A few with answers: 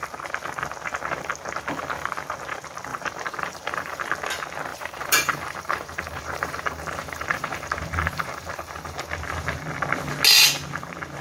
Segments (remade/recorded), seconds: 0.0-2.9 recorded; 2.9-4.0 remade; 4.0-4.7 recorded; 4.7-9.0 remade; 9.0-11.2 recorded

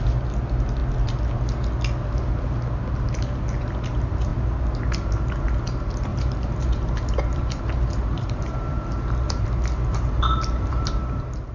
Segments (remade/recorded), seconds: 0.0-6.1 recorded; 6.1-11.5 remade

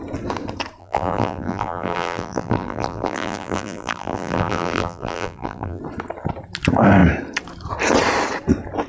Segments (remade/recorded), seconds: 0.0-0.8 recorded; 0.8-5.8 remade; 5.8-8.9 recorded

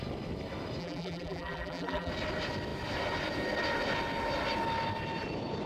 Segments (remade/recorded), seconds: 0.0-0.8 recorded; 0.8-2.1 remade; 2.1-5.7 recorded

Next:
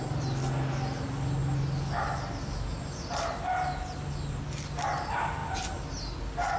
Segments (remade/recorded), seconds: 0.0-6.6 recorded